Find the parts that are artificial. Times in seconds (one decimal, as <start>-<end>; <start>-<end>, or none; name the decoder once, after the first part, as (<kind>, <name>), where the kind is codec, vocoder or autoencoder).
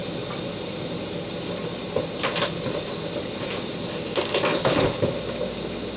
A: none